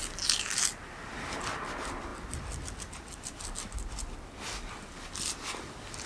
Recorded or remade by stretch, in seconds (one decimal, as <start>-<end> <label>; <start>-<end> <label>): 0.0-6.1 recorded